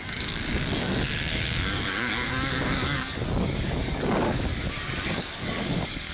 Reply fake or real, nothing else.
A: fake